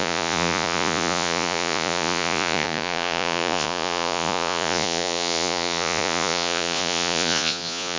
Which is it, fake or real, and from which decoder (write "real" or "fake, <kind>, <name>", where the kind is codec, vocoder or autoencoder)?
fake, vocoder, Vocos